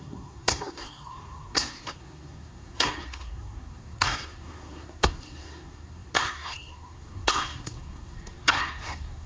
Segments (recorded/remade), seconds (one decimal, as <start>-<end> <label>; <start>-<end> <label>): 0.0-9.3 remade